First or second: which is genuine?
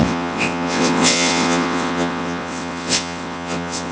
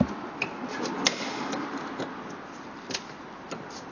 second